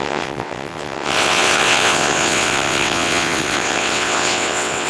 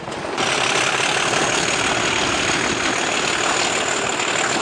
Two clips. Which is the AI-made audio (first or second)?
first